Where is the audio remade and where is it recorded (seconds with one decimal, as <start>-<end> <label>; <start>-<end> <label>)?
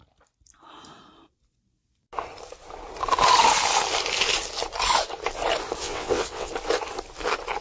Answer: 0.0-5.8 recorded; 5.8-6.5 remade; 6.5-7.6 recorded